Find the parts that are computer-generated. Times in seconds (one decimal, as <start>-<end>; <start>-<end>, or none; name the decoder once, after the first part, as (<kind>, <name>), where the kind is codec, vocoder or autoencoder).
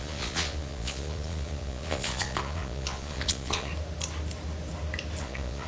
0.0-3.7 (vocoder, Vocos); 5.2-5.7